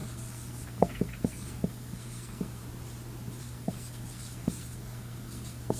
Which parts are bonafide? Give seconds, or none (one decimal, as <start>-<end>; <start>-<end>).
2.6-3.4